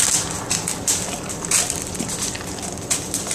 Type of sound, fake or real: real